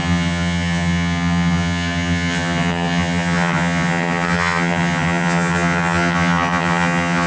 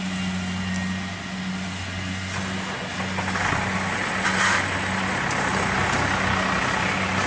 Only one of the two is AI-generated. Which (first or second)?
first